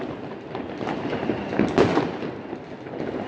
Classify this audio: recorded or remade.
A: recorded